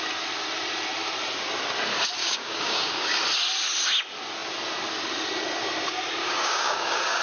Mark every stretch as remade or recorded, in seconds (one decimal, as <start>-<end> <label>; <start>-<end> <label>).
0.0-2.2 recorded; 2.2-3.2 remade; 3.2-6.2 recorded; 6.2-7.2 remade